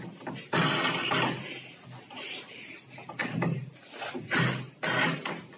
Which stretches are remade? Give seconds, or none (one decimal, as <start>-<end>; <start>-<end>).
none